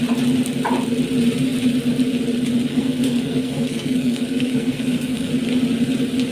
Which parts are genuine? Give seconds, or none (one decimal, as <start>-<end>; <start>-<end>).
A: 0.0-2.7; 5.3-6.3